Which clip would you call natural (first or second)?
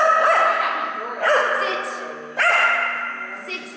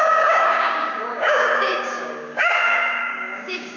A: first